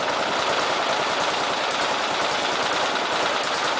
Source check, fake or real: real